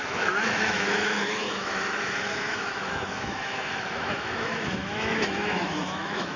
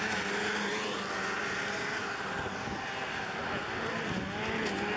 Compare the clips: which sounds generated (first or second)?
first